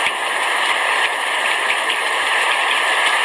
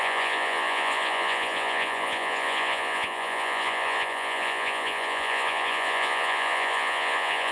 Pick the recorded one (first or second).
first